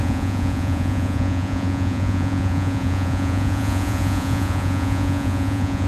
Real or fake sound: fake